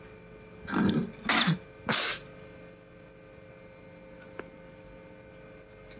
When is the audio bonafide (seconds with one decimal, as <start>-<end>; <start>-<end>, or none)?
0.0-6.0